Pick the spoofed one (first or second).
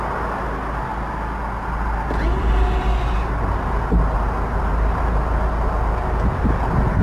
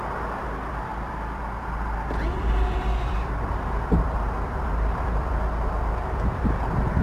second